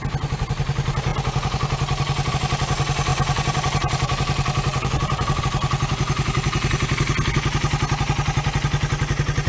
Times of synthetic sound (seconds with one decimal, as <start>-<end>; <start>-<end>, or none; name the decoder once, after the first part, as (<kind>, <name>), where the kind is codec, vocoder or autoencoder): 3.1-5.4 (vocoder, BigVGAN v2)